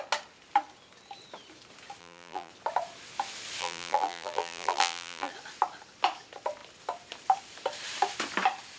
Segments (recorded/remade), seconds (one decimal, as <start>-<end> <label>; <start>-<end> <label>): 0.0-2.0 recorded; 2.0-2.5 remade; 2.5-3.6 recorded; 3.6-5.3 remade; 5.3-8.8 recorded